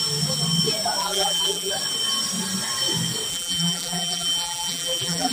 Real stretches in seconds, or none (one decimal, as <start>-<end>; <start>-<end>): 0.0-1.0; 1.7-3.3